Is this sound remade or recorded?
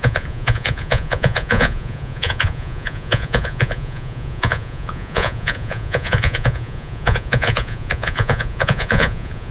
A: remade